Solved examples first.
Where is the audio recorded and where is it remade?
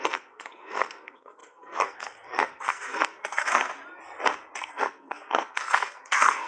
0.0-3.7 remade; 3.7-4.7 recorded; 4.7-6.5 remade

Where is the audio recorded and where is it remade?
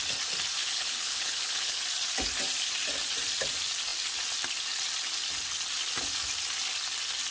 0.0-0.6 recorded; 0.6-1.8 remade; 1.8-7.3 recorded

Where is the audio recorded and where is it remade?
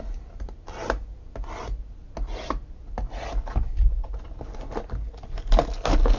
0.0-6.2 recorded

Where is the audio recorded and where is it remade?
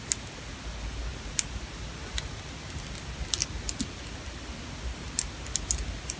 0.0-6.2 recorded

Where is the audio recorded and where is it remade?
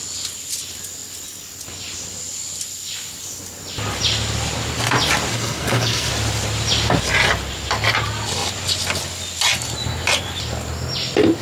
0.0-5.3 recorded; 5.3-6.1 remade; 6.1-11.4 recorded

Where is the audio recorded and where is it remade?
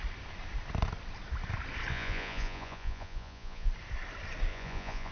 0.0-1.9 recorded; 1.9-3.7 remade; 3.7-4.5 recorded; 4.5-5.1 remade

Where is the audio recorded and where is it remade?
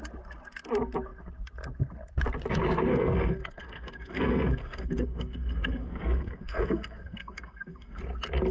0.0-2.9 recorded; 2.9-8.0 remade; 8.0-8.5 recorded